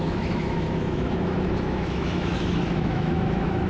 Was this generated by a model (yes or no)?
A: yes